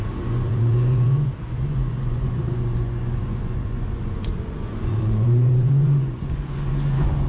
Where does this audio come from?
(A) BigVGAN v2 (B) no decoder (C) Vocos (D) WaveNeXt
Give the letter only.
C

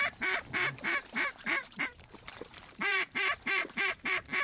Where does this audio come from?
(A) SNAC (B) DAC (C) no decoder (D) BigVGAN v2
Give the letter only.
D